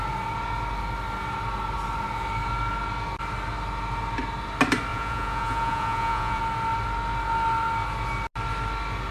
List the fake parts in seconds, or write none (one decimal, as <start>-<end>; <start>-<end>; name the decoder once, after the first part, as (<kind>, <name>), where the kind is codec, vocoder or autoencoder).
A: 4.9-6.4 (vocoder, Vocos)